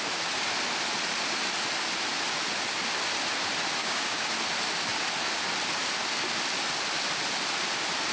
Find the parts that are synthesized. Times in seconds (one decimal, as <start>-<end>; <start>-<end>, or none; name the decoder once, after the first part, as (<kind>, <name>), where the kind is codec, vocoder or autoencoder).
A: 3.8-4.3 (codec, DAC)